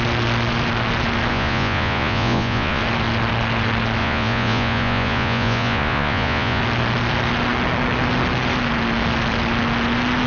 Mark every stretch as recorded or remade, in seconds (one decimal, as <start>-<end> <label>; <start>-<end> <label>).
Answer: 0.0-1.3 recorded; 1.3-2.8 remade; 2.8-4.0 recorded; 4.0-6.6 remade; 6.6-10.3 recorded